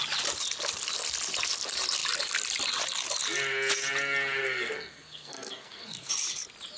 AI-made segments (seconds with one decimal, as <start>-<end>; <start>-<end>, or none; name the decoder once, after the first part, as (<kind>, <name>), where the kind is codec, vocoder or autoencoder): 4.4-6.1 (codec, SNAC)